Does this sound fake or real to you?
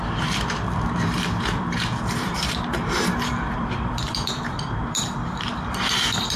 fake